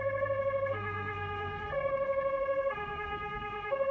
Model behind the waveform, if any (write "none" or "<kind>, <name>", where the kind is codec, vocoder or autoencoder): codec, SNAC